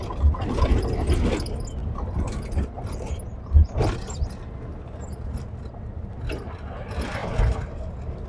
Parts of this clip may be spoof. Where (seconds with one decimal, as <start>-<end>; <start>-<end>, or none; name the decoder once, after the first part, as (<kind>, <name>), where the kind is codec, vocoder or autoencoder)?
7.2-7.8 (vocoder, BigVGAN v2)